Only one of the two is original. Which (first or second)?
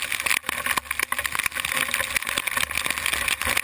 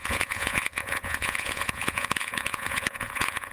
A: first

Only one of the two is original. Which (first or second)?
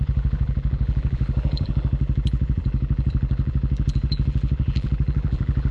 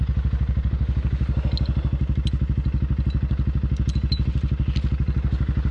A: second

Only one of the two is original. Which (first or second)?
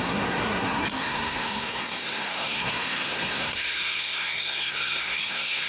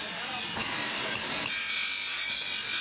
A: second